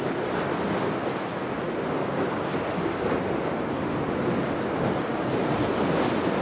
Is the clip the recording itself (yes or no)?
yes